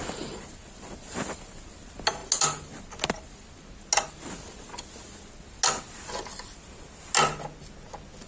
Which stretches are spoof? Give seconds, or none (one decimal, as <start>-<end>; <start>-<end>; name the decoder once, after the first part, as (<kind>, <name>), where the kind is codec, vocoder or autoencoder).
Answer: none